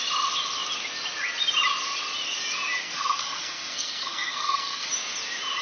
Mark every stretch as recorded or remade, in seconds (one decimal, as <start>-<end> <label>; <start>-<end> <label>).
0.0-2.8 recorded; 2.8-4.9 remade; 4.9-5.6 recorded